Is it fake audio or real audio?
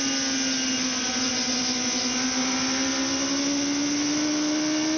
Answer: real